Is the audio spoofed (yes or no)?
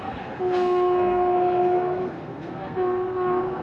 yes